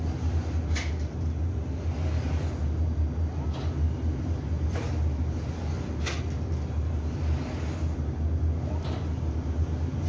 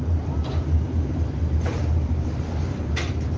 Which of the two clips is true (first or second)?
first